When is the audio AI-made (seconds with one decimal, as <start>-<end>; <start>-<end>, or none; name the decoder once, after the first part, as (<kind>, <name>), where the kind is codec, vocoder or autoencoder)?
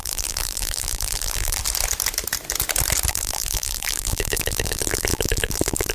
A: 0.0-1.6 (vocoder, BigVGAN v2); 3.1-5.9